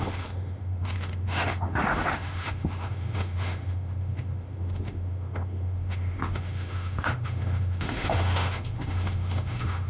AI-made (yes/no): yes